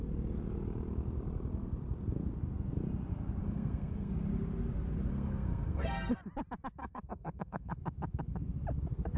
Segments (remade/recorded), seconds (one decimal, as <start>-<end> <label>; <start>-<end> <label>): 0.0-3.4 recorded; 3.4-4.1 remade; 4.1-5.1 recorded; 5.1-6.1 remade; 6.1-6.8 recorded; 6.8-7.8 remade; 7.8-9.2 recorded